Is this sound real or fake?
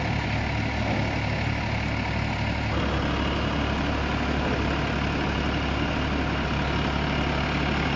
real